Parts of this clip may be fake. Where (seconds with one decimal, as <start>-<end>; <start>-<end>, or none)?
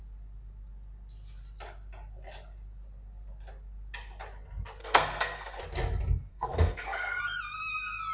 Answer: 4.8-5.6; 6.3-7.2